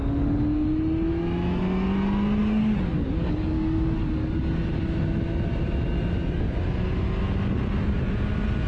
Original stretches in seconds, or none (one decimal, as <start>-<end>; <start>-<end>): 0.0-2.4; 4.4-8.7